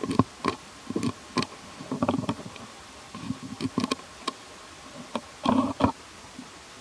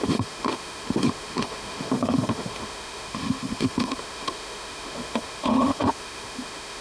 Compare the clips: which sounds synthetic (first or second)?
second